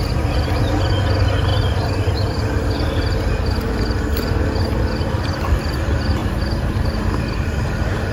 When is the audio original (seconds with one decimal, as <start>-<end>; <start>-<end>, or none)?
0.0-1.5; 4.4-6.2; 7.6-8.1